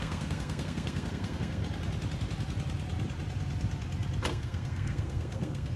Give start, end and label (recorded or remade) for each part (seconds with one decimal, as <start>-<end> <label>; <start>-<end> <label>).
0.0-1.6 remade; 1.6-4.3 recorded; 4.3-5.8 remade

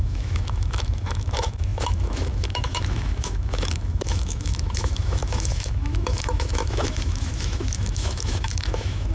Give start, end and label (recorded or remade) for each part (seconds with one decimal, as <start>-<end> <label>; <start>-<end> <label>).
0.0-9.1 remade

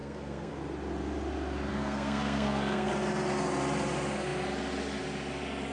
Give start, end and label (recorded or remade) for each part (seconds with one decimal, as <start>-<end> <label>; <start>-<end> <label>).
0.0-0.5 remade; 0.5-1.7 recorded; 1.7-2.9 remade; 2.9-5.7 recorded

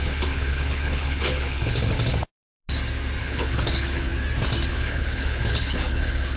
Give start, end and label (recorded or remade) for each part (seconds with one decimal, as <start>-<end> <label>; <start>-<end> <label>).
0.0-2.1 remade; 2.1-3.2 recorded; 3.2-4.1 remade; 4.1-4.7 recorded; 4.7-6.4 remade